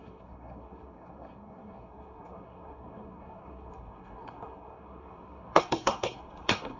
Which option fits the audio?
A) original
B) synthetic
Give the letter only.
B